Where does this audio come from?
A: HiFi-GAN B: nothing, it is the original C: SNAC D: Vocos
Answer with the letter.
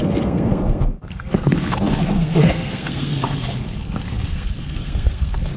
C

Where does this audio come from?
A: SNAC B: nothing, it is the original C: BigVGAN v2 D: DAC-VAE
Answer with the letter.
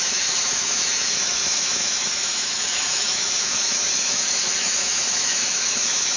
D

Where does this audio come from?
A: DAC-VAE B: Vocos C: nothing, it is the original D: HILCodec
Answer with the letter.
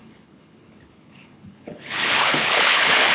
D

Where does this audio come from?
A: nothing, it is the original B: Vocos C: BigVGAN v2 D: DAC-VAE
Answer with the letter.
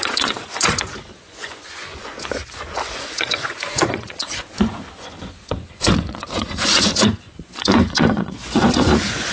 B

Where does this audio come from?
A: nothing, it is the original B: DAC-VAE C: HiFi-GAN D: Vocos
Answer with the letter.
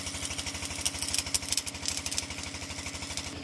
A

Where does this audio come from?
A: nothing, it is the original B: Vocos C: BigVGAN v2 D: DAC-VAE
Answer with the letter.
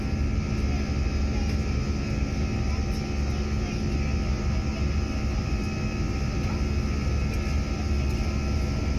A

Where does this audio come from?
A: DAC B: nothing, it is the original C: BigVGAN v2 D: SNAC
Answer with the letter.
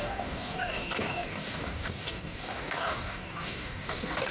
A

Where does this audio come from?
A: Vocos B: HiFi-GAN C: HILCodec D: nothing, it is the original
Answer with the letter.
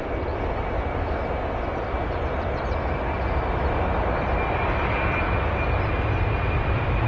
D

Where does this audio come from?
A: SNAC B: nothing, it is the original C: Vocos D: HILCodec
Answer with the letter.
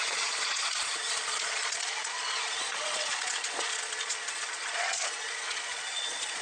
C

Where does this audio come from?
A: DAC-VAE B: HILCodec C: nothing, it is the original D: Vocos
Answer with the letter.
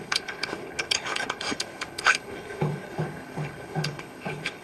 B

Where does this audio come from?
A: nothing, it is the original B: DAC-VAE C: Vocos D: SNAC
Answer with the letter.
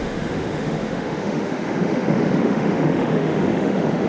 B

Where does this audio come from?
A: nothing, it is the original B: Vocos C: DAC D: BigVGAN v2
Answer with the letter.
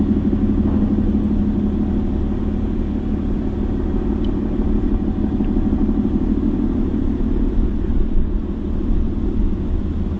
A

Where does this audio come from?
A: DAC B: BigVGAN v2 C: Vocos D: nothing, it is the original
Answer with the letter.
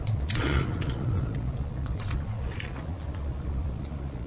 C